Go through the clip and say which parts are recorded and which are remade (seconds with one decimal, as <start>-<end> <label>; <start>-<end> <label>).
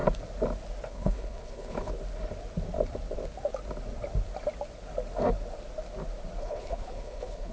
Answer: 0.0-0.9 recorded; 0.9-1.9 remade; 1.9-6.4 recorded; 6.4-7.5 remade